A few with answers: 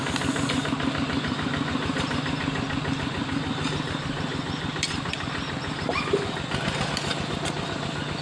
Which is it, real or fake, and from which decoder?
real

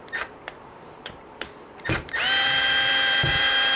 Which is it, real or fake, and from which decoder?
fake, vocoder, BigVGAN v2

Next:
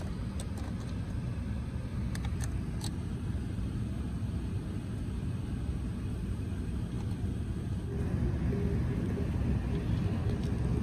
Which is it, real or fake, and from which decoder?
real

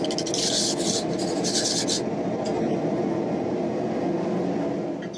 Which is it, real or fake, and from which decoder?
real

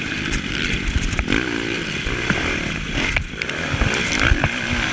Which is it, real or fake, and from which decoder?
fake, vocoder, BigVGAN v2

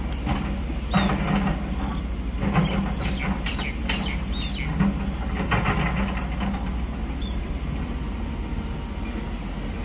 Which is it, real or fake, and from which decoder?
real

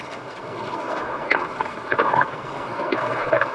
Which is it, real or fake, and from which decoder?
fake, codec, SNAC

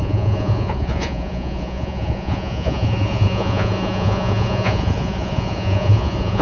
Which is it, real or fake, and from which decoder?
fake, vocoder, Vocos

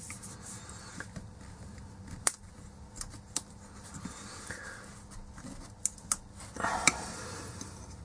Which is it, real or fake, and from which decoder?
real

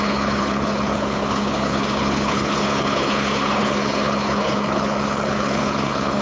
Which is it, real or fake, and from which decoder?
fake, codec, HILCodec